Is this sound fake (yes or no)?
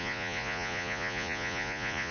yes